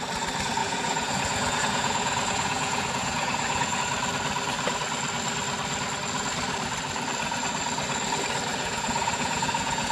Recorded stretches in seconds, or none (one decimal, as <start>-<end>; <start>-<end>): 0.0-0.6; 3.8-8.5